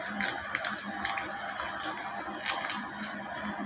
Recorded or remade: recorded